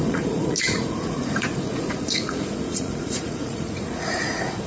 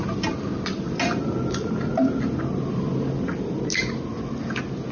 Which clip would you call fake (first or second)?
first